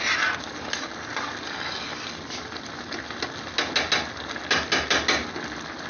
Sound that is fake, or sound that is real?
real